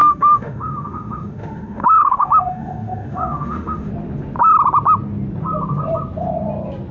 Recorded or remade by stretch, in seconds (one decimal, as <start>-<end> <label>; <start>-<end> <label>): 0.0-3.9 remade; 3.9-6.9 recorded

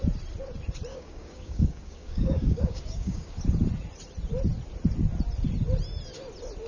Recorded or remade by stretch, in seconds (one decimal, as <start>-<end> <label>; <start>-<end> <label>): 0.0-0.9 recorded; 0.9-3.4 remade; 3.4-6.7 recorded

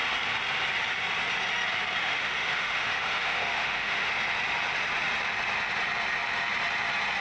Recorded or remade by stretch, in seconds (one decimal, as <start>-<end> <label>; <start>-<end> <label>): 0.0-2.0 recorded; 2.0-4.1 remade; 4.1-7.2 recorded

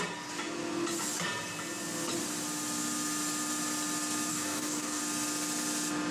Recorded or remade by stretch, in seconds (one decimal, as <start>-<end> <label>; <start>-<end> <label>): 0.0-4.3 recorded; 4.3-5.0 remade; 5.0-6.1 recorded

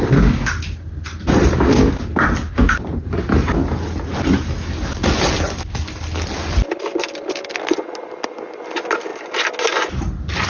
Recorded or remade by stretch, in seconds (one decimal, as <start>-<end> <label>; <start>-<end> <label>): 0.0-10.5 recorded

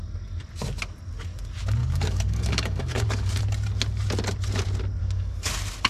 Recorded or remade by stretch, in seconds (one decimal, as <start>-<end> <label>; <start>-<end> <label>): 0.0-1.8 recorded; 1.8-3.4 remade; 3.4-5.0 recorded; 5.0-5.5 remade; 5.5-5.9 recorded